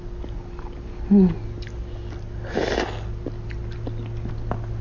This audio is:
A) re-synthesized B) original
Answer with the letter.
B